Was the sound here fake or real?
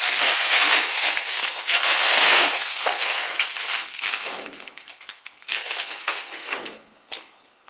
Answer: fake